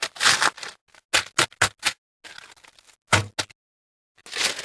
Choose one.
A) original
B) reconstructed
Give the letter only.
A